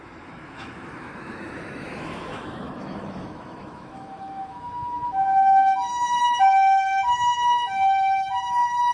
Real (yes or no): no